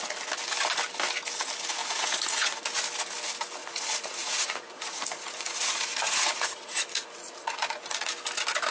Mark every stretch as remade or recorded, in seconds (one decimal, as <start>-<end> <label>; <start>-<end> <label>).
0.0-1.8 recorded; 1.8-2.7 remade; 2.7-3.6 recorded; 3.6-8.1 remade; 8.1-8.7 recorded